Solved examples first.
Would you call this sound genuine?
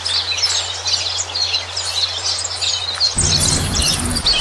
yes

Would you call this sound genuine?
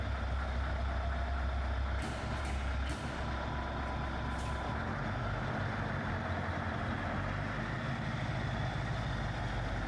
yes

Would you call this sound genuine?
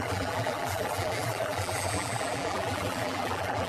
no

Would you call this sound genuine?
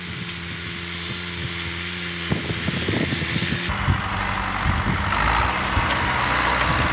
yes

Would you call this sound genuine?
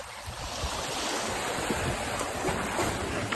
yes